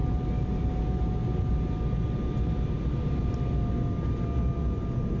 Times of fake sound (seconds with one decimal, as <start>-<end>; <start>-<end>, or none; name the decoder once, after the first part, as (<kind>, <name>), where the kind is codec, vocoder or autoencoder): none